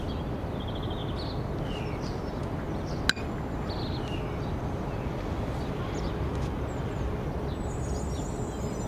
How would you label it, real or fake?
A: real